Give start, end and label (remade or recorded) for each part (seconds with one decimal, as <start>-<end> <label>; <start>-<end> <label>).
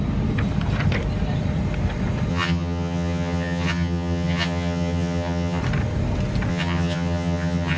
0.0-2.3 recorded; 2.3-5.6 remade; 5.6-6.5 recorded; 6.5-7.8 remade